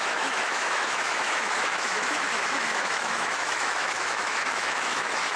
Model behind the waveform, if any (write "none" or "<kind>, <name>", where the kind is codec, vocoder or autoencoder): autoencoder, DAC-VAE